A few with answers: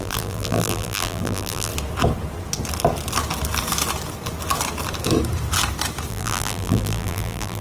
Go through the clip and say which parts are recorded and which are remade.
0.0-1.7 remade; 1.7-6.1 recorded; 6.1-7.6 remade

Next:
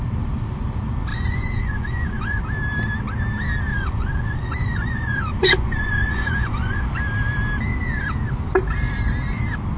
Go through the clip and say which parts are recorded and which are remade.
0.0-1.1 recorded; 1.1-2.4 remade; 2.4-3.7 recorded; 3.7-6.8 remade; 6.8-9.8 recorded

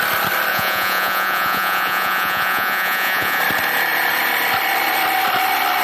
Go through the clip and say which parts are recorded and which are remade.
0.0-0.5 recorded; 0.5-3.4 remade; 3.4-5.8 recorded